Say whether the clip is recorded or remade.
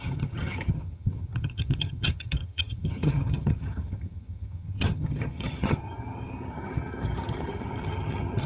remade